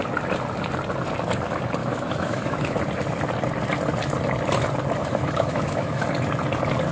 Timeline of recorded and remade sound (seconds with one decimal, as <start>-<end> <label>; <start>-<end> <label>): 0.0-1.8 recorded; 1.8-2.8 remade; 2.8-5.0 recorded; 5.0-6.0 remade; 6.0-6.9 recorded